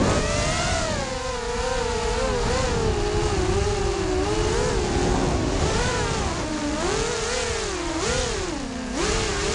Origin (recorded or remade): recorded